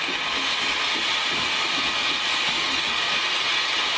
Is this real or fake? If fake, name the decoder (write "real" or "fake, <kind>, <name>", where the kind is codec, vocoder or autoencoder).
real